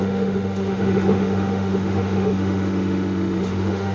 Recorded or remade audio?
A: remade